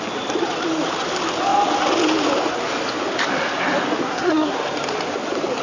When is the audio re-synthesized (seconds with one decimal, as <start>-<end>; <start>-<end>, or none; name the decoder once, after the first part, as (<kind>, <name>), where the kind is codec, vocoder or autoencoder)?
4.0-4.6 (codec, SNAC)